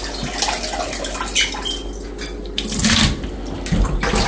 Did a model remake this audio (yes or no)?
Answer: no